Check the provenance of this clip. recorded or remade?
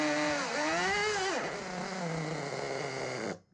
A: recorded